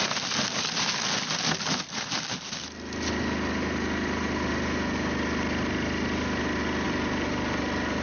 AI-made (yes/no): no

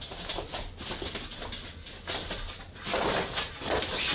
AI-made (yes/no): no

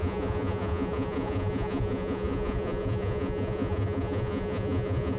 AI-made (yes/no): yes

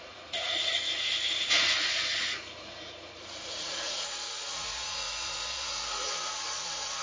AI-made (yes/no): yes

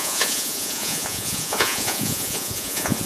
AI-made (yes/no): yes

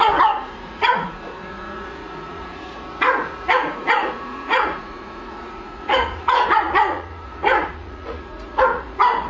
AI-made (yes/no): yes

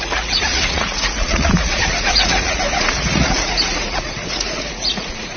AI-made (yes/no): yes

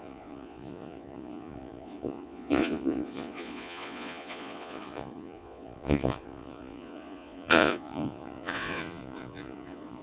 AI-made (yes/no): yes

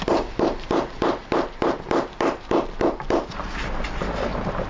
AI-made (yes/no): no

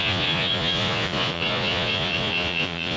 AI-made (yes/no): yes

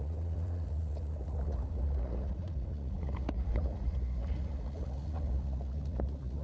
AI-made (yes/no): yes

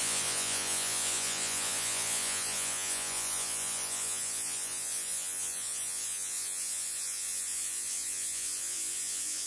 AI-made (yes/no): yes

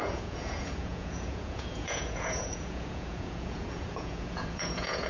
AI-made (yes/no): yes